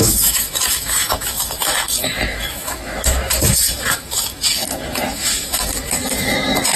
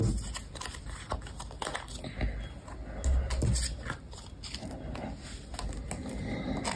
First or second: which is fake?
first